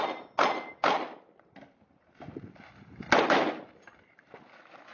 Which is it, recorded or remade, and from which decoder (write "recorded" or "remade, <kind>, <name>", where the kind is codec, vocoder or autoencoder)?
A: recorded